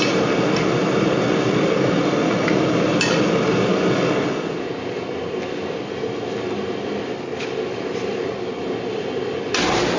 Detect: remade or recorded recorded